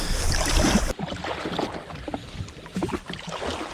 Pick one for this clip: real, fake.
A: real